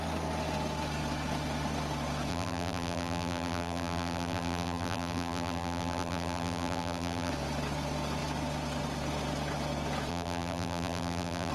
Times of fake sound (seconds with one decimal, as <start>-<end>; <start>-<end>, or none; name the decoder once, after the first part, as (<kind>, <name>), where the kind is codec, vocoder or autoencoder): 2.3-7.3 (vocoder, BigVGAN v2); 10.1-11.5